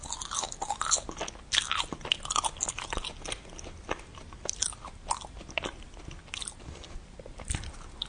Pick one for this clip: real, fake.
real